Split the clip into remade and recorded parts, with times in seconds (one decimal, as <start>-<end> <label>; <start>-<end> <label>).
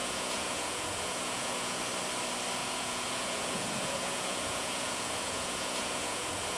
0.0-1.8 remade; 1.8-2.6 recorded; 2.6-6.6 remade